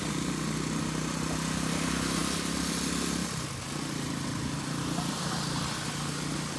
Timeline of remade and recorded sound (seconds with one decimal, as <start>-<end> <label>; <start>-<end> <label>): 0.0-6.6 recorded